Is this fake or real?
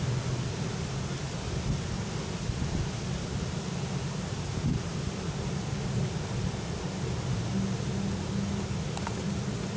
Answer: real